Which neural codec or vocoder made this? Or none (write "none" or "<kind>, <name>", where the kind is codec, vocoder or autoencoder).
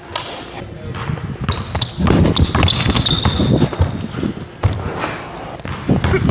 none